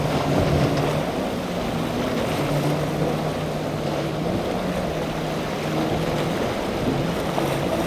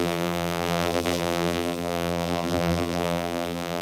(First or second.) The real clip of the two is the first